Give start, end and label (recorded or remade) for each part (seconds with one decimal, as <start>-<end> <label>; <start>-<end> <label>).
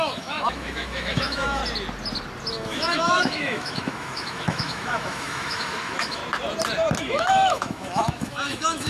0.0-1.6 remade; 1.6-2.5 recorded; 2.5-6.2 remade; 6.2-7.0 recorded; 7.0-8.9 remade